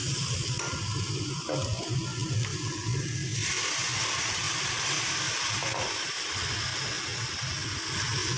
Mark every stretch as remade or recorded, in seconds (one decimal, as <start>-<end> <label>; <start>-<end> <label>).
0.0-8.4 recorded